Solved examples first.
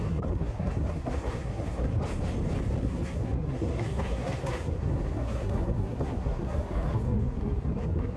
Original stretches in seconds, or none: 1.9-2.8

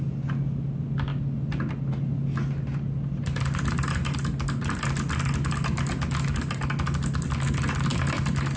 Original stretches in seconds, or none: 0.0-8.6

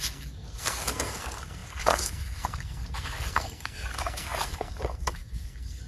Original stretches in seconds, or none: none

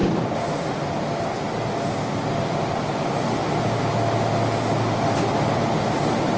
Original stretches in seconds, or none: 0.0-2.4; 3.4-6.4